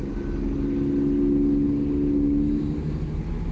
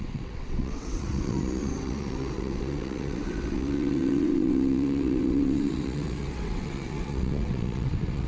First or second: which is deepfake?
second